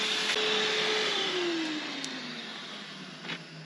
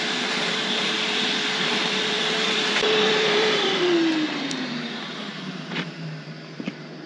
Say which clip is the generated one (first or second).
second